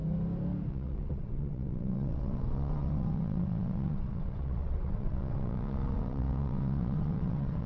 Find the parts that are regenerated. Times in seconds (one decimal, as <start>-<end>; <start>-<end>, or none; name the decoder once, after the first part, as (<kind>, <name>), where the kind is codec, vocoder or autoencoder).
0.7-7.7 (vocoder, WaveNeXt)